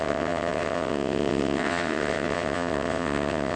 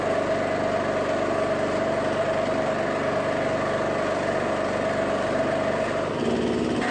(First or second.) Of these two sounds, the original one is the second